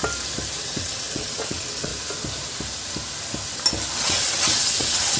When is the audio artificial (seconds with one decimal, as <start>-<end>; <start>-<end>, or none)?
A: 0.6-1.9; 4.0-5.2